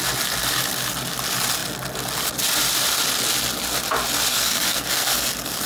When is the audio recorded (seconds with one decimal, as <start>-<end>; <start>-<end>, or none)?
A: 0.0-4.3